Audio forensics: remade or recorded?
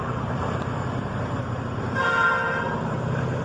remade